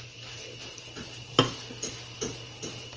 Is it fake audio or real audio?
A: real